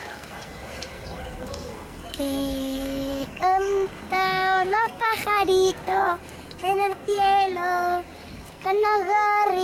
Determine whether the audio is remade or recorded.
remade